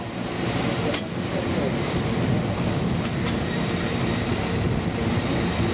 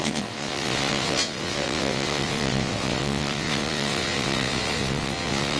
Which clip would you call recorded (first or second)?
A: first